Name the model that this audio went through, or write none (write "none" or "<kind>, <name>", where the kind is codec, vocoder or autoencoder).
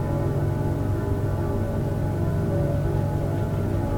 none